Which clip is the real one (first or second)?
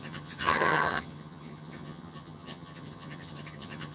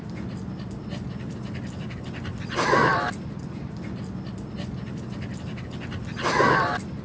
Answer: second